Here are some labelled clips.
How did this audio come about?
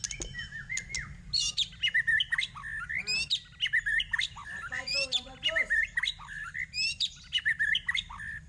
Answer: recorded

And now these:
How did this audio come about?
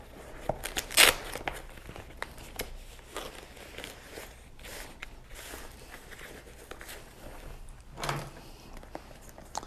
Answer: recorded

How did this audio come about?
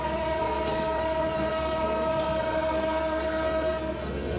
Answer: remade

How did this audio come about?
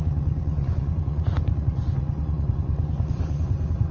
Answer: remade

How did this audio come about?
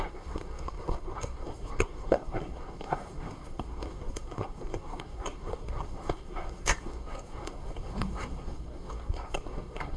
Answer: remade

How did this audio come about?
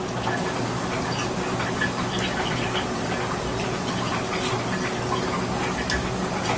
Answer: recorded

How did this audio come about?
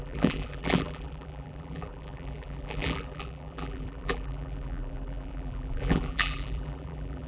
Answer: remade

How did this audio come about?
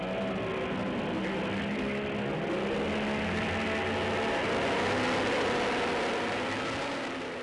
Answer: recorded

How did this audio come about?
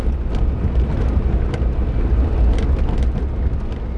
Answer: recorded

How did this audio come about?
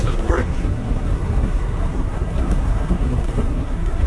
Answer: remade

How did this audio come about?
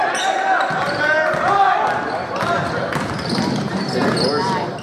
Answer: recorded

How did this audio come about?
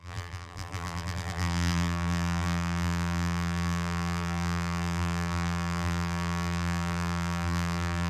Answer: remade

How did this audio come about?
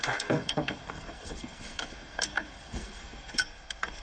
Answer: remade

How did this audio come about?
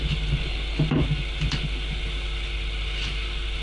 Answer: recorded